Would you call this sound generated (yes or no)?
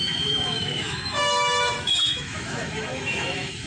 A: yes